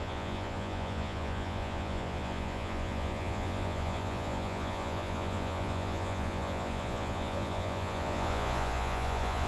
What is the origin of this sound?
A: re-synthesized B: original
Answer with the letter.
A